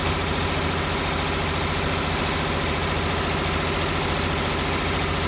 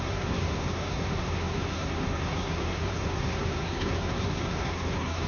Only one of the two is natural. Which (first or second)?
first